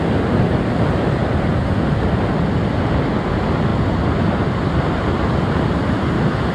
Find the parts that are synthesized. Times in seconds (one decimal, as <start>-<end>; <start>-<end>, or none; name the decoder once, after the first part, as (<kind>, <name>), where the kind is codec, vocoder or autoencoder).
none